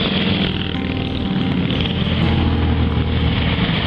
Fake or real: real